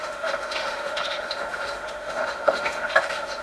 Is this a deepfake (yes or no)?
yes